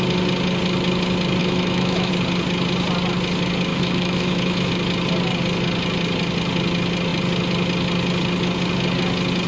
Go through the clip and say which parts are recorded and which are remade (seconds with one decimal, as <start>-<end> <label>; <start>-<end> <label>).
0.0-1.4 recorded; 1.4-2.1 remade; 2.1-3.7 recorded; 3.7-4.7 remade; 4.7-9.5 recorded